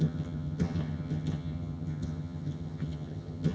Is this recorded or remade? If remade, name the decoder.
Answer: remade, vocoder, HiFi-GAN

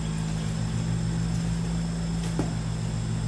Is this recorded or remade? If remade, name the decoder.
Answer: recorded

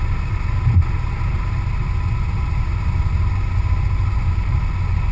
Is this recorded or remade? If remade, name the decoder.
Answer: recorded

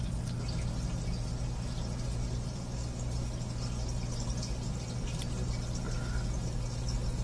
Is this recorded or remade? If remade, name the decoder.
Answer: recorded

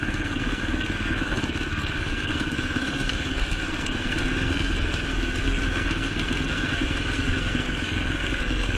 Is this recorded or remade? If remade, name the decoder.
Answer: remade, codec, SNAC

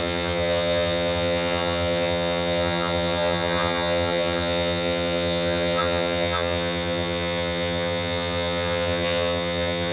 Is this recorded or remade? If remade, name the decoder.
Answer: remade, vocoder, HiFi-GAN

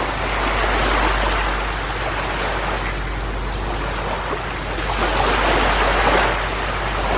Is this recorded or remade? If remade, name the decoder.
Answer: recorded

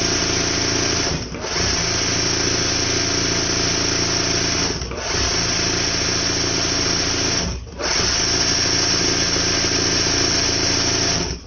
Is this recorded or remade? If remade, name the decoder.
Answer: recorded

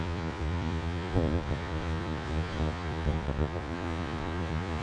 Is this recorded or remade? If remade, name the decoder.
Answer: remade, vocoder, Vocos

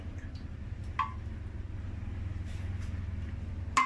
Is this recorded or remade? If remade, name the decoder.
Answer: recorded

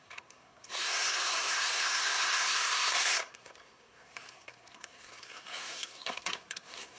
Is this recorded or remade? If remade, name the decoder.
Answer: remade, codec, SNAC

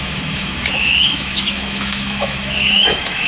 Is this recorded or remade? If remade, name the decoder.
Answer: remade, autoencoder, DAC-VAE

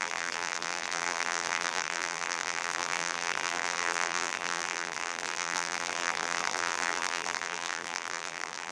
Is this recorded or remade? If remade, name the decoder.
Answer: remade, vocoder, BigVGAN v2